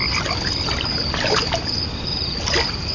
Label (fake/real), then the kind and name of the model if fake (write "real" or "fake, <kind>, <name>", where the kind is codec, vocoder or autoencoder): real